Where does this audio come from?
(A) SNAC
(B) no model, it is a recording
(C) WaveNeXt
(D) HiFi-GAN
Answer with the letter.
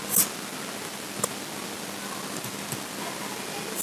B